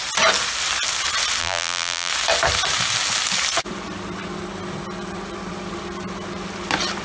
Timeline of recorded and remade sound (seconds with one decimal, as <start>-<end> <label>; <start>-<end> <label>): 0.0-1.4 recorded; 1.4-2.1 remade; 2.1-7.0 recorded